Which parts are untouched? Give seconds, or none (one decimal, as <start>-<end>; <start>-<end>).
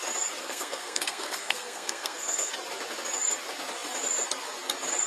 0.0-0.4; 2.5-5.1